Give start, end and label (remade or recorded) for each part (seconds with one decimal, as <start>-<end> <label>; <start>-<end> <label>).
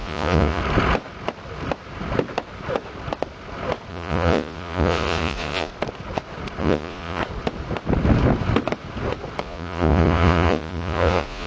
0.0-0.6 remade; 0.6-3.9 recorded; 3.9-5.7 remade; 5.7-6.6 recorded; 6.6-7.2 remade; 7.2-9.4 recorded; 9.4-11.5 remade